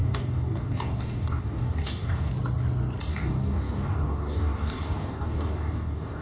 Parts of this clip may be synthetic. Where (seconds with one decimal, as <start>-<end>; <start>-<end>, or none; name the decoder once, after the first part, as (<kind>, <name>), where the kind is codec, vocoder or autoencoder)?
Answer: 0.0-2.3 (codec, DAC); 3.1-6.2